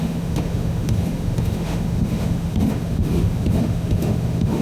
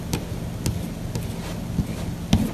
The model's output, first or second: first